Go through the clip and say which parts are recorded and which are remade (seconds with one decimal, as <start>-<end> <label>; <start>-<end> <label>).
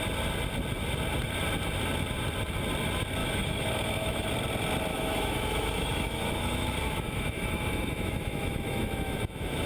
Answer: 0.0-3.2 recorded; 3.2-4.3 remade; 4.3-4.9 recorded; 4.9-9.7 remade